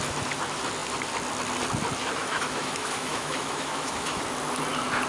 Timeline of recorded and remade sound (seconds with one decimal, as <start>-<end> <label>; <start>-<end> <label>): 0.0-2.2 recorded; 2.2-4.2 remade; 4.2-5.1 recorded